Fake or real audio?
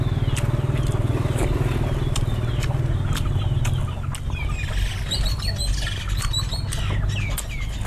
real